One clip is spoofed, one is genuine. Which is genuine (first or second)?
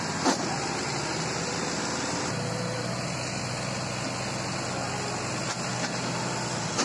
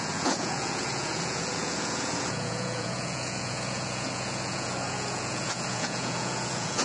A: first